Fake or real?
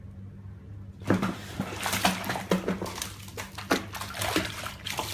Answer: real